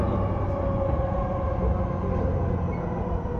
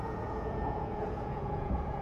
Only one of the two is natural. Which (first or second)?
first